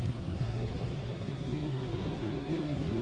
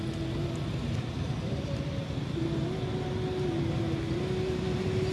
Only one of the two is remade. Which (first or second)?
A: first